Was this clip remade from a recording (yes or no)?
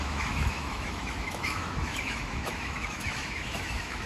yes